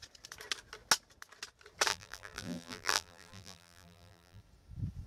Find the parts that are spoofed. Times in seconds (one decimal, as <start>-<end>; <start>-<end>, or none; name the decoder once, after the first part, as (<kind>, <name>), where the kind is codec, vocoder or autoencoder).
1.9-4.4 (vocoder, BigVGAN v2)